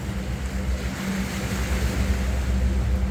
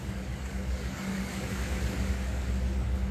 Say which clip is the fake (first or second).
second